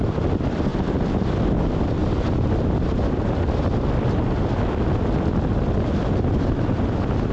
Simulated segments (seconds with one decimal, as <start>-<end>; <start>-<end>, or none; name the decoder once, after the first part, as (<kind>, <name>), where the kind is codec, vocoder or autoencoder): none